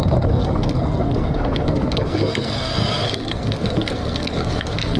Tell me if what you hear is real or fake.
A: fake